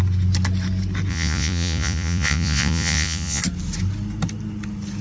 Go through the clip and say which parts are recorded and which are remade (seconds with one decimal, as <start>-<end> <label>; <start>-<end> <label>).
0.0-1.1 recorded; 1.1-3.4 remade; 3.4-5.0 recorded